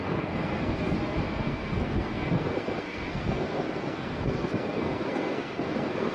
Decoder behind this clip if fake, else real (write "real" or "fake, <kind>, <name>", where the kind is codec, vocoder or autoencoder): fake, codec, SNAC